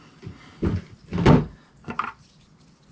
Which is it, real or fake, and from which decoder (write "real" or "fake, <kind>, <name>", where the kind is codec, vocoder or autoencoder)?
real